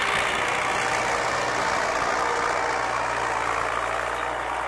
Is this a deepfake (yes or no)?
no